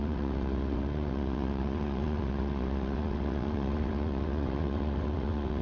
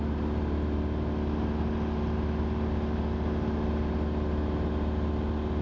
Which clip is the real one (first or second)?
second